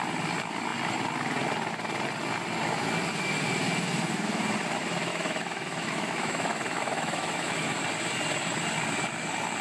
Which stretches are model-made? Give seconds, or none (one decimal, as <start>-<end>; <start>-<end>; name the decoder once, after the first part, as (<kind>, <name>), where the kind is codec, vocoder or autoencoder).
5.1-7.8 (autoencoder, DAC-VAE)